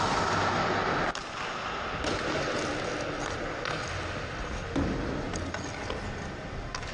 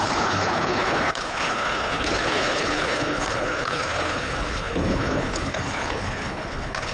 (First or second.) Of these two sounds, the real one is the first